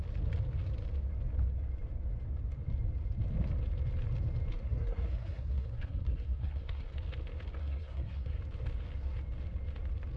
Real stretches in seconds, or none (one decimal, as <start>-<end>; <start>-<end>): 0.0-4.5; 6.9-7.6; 8.4-10.2